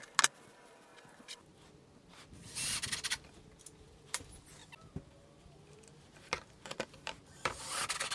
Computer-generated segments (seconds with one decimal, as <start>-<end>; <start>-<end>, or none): none

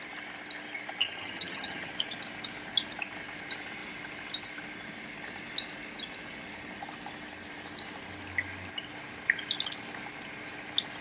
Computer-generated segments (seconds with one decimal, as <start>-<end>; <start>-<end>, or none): 1.0-1.9

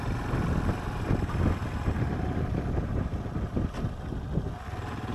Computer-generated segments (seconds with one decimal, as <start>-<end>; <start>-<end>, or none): none

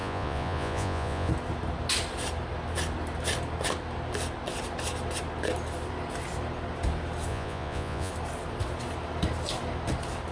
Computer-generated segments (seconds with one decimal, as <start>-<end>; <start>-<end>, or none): 0.0-1.3; 7.3-8.1

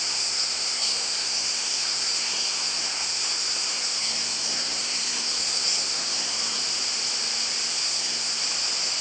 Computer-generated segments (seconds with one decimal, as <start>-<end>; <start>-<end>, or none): 0.0-6.6; 7.7-8.4

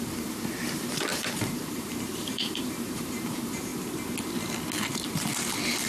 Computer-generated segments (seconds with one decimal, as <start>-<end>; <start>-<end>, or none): 0.0-3.7

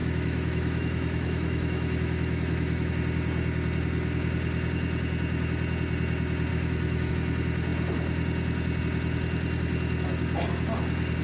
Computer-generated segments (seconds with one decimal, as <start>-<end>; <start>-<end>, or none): 0.0-2.9; 6.5-7.1